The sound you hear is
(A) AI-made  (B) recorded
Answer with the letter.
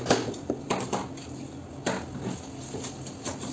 B